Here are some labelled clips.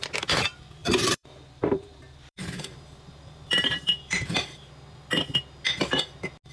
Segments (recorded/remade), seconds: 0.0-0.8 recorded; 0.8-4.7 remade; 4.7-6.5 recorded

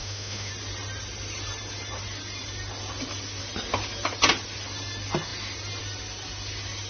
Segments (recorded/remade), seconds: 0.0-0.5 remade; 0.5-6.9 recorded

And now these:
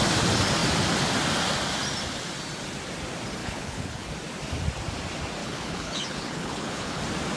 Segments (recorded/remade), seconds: 0.0-3.4 recorded; 3.4-4.1 remade; 4.1-5.4 recorded; 5.4-7.0 remade; 7.0-7.4 recorded

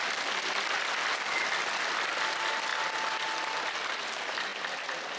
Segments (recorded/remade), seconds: 0.0-2.7 remade; 2.7-3.8 recorded; 3.8-5.2 remade

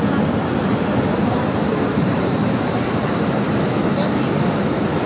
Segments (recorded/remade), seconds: 0.0-1.2 recorded; 1.2-3.6 remade; 3.6-5.1 recorded

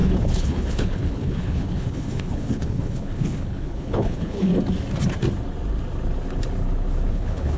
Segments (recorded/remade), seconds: 0.0-4.5 remade; 4.5-7.1 recorded; 7.1-7.6 remade

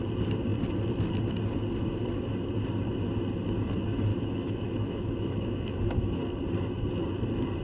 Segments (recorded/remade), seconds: 0.0-4.1 recorded; 4.1-6.2 remade; 6.2-7.6 recorded

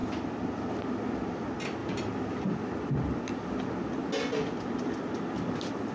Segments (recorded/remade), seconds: 0.0-0.7 remade; 0.7-1.8 recorded; 1.8-2.6 remade; 2.6-5.9 recorded